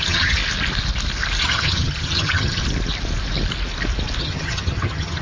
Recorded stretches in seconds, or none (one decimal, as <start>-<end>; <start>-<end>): 0.4-1.4; 2.6-4.2